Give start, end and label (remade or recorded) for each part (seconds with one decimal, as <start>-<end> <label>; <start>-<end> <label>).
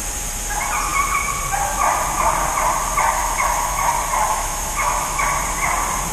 0.0-3.2 recorded; 3.2-3.9 remade; 3.9-4.3 recorded; 4.3-5.2 remade; 5.2-6.1 recorded